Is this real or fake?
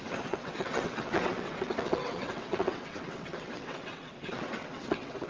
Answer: fake